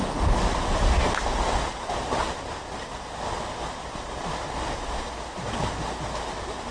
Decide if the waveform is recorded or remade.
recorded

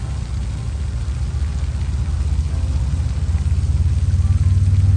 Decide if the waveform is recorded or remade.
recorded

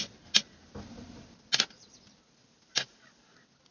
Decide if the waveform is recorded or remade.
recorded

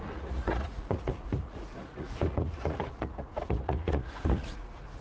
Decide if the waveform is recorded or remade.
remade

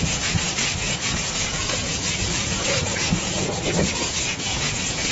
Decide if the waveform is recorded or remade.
remade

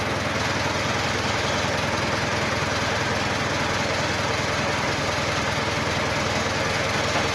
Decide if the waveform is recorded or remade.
recorded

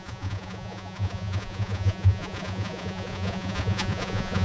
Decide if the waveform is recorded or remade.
remade